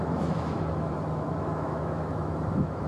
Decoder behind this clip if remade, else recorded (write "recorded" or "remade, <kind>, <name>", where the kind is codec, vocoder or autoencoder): remade, autoencoder, DAC-VAE